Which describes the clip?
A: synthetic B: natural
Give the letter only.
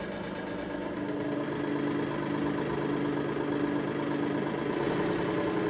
B